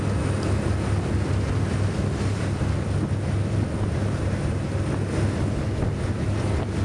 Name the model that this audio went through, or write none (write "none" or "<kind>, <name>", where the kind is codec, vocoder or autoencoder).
none